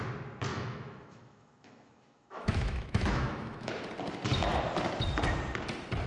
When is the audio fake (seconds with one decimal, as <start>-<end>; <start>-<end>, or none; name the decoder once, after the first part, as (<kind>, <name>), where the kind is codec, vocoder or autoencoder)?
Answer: 0.5-3.7 (autoencoder, DAC-VAE)